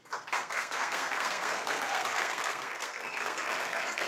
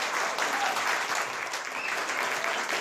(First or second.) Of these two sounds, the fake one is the first